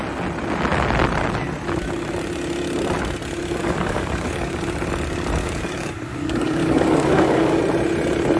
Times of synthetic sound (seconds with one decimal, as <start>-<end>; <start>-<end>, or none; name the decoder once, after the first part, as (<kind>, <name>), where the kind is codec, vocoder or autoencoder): 3.6-4.6 (codec, DAC); 5.4-7.6